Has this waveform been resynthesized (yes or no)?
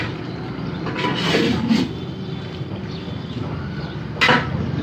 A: no